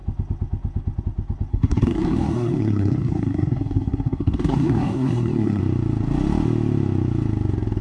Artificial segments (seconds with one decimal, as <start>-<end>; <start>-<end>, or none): 1.5-5.6